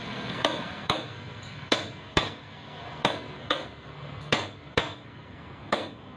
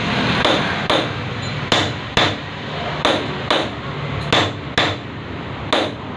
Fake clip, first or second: first